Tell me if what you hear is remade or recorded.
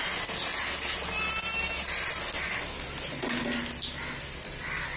recorded